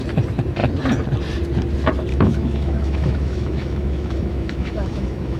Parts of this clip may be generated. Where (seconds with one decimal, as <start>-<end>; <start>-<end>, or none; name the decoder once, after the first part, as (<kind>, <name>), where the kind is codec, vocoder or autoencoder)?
2.1-5.4 (autoencoder, DAC-VAE)

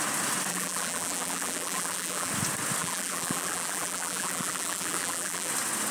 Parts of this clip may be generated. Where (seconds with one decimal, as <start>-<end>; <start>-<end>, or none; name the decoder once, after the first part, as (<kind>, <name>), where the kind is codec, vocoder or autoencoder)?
0.5-2.3 (vocoder, BigVGAN v2); 2.8-5.5

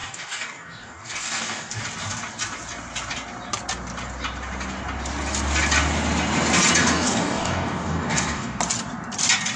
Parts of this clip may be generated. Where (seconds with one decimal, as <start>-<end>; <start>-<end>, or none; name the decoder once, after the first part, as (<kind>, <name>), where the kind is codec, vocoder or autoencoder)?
0.0-1.8 (codec, DAC); 6.8-8.6

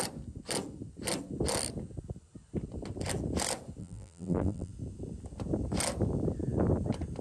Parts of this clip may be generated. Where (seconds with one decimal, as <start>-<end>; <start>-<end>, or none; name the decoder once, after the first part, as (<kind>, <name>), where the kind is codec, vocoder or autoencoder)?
3.8-4.7 (vocoder, BigVGAN v2)

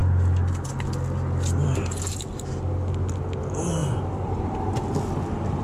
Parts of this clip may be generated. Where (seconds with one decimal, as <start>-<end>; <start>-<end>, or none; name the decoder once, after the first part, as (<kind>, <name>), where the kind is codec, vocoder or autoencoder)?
3.8-4.4 (vocoder, BigVGAN v2)

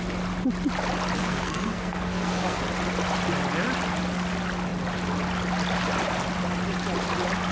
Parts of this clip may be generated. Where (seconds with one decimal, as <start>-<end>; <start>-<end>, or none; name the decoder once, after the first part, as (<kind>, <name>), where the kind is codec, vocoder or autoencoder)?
1.2-2.6 (codec, SNAC)

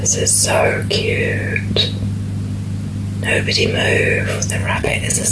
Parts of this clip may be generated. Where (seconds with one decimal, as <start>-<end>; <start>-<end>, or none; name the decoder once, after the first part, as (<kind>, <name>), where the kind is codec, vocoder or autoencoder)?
4.6-5.3 (vocoder, WaveNeXt)